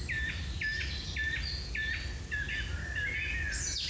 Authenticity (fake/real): real